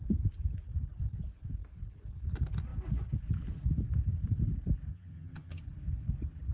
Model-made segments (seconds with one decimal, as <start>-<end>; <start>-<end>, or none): 4.9-5.6